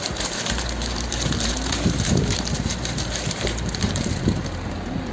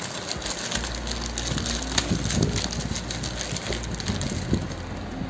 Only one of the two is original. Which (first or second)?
second